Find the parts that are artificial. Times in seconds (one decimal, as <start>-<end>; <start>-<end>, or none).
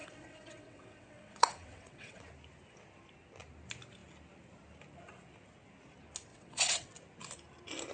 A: 0.0-2.2; 6.3-6.9